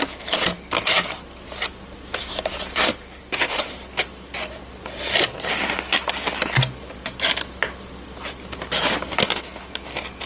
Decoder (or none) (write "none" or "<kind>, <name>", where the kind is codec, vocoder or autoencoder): none